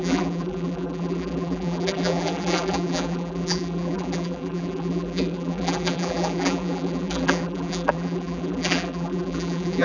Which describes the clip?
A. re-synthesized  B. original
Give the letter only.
A